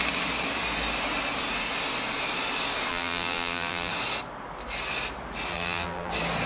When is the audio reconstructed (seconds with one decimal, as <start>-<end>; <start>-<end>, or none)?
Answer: 2.9-3.9; 5.5-6.1